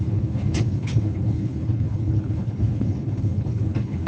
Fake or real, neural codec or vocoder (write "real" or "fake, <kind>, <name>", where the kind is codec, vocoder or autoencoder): fake, codec, HILCodec